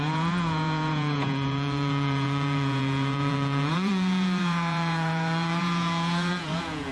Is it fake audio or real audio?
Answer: fake